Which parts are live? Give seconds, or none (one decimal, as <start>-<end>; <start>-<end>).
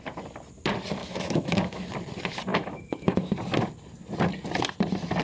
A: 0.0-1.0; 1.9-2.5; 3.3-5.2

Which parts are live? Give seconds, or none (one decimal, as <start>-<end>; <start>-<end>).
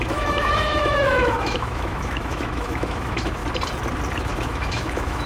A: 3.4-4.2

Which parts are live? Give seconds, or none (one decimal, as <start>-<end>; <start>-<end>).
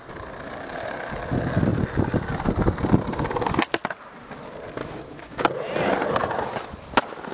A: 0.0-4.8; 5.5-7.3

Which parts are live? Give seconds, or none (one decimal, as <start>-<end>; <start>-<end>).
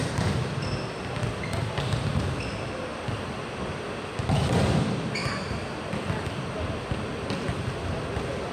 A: 0.0-8.5